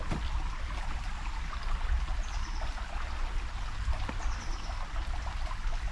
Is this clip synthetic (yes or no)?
no